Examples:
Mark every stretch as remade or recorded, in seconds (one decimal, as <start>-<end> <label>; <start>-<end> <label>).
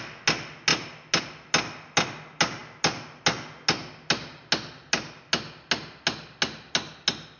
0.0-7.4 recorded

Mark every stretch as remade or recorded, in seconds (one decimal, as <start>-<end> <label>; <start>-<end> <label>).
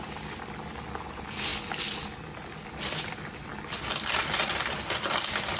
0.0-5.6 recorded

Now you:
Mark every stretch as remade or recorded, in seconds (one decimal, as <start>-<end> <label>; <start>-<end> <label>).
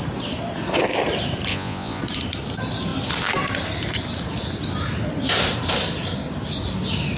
0.0-1.5 recorded; 1.5-2.0 remade; 2.0-7.2 recorded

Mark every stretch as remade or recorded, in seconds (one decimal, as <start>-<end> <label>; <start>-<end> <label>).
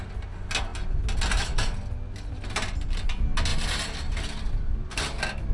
0.0-5.5 recorded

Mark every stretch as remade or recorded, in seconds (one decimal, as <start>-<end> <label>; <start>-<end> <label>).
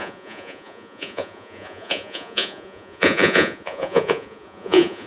0.0-5.1 remade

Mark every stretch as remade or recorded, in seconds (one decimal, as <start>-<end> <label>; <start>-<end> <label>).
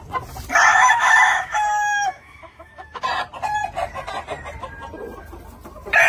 0.0-0.7 recorded; 0.7-3.0 remade; 3.0-6.1 recorded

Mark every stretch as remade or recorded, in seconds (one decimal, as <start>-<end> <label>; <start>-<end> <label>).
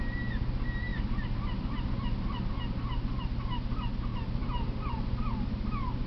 0.0-0.9 recorded; 0.9-2.5 remade; 2.5-4.1 recorded; 4.1-4.8 remade; 4.8-6.1 recorded